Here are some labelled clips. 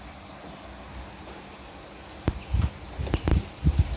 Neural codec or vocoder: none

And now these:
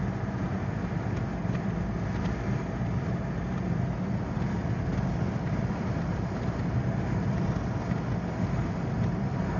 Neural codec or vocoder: none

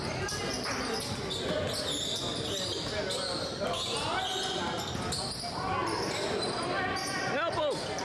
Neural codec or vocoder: none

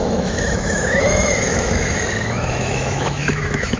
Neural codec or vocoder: autoencoder, DAC-VAE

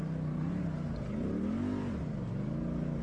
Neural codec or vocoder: none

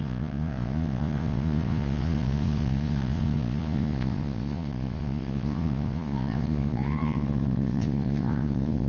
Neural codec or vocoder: vocoder, Vocos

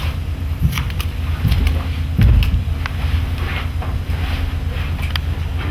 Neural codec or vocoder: none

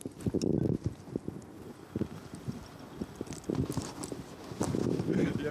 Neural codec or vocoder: none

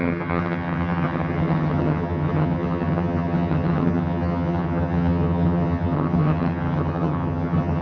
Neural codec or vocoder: vocoder, HiFi-GAN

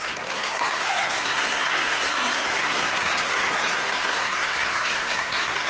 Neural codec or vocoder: codec, SNAC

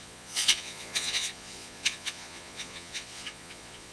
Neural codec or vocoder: vocoder, Vocos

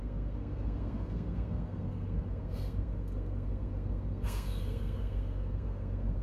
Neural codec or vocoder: codec, SNAC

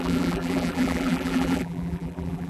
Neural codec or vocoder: vocoder, BigVGAN v2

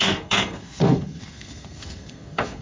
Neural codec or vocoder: codec, SNAC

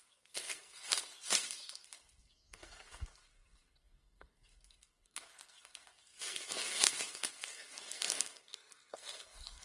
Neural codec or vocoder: codec, SNAC